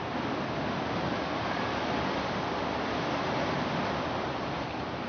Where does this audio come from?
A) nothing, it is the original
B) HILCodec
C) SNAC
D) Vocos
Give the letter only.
A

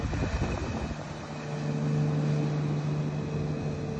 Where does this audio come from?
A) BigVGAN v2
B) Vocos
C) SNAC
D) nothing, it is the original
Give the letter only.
D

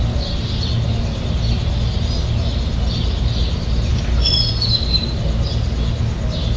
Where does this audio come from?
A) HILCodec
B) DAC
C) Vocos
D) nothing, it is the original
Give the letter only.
D